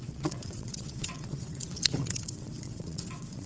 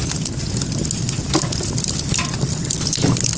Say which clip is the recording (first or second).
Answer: second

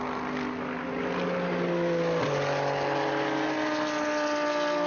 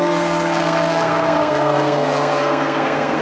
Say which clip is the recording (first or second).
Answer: first